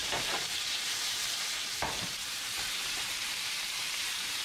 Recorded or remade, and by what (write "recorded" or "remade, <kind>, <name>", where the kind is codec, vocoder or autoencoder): remade, vocoder, BigVGAN v2